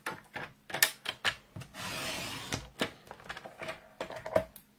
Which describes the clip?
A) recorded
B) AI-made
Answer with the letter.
A